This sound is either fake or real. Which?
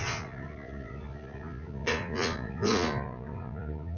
fake